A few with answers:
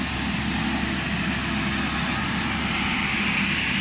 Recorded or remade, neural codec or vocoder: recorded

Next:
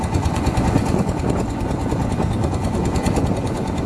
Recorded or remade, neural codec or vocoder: remade, vocoder, Vocos